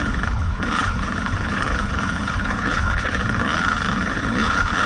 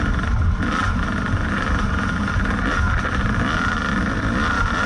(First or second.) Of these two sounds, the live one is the second